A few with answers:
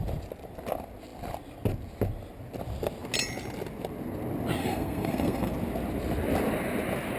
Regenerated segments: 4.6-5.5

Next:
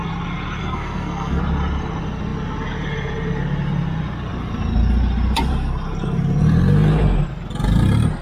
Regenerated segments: 0.6-1.4

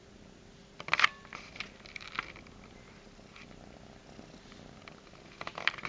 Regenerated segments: none

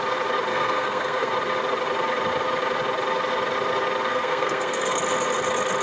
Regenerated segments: 0.5-1.3; 4.1-5.0